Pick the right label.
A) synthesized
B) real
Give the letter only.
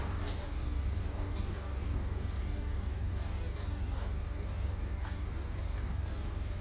A